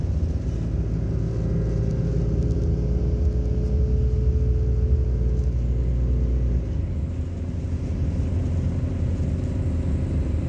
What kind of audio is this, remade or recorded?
recorded